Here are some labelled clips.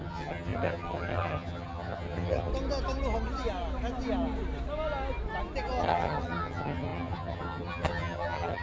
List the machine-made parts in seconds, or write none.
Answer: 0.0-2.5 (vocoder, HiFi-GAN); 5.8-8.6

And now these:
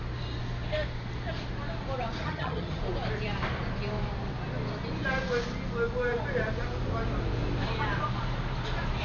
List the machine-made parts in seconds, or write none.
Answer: 2.2-2.8 (vocoder, HiFi-GAN)

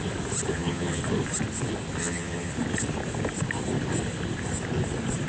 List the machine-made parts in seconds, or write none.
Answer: 0.5-1.0 (vocoder, HiFi-GAN); 2.0-2.5

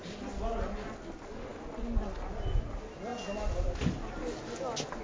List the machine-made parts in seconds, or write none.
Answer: none

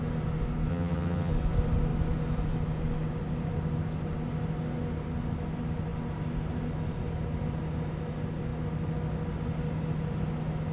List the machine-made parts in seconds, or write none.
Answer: 0.7-1.3 (vocoder, HiFi-GAN)

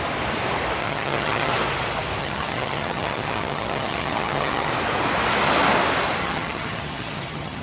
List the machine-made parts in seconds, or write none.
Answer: 0.8-1.5 (vocoder, HiFi-GAN); 2.2-4.7; 6.2-7.6

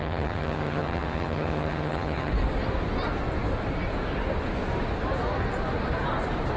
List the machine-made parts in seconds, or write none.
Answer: 0.0-2.3 (vocoder, HiFi-GAN)

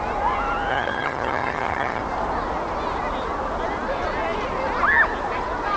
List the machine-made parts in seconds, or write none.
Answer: 0.7-2.0 (vocoder, HiFi-GAN)